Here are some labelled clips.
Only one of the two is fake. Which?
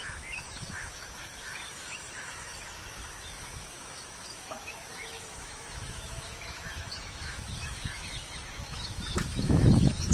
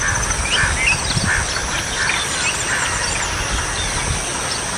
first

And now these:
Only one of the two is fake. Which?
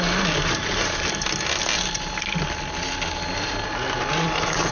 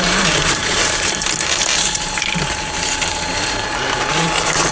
second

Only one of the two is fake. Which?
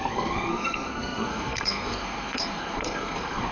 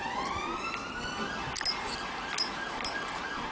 first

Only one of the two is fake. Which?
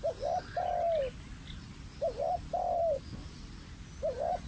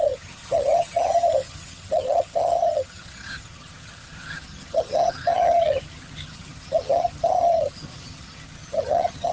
second